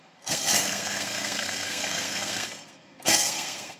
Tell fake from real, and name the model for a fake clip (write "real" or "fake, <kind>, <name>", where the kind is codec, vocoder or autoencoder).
fake, codec, SNAC